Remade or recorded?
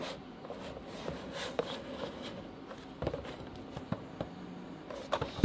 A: recorded